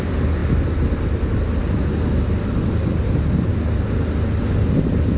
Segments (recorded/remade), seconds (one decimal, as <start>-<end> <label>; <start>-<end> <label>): 0.0-5.2 recorded